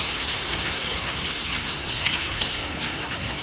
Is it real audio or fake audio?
fake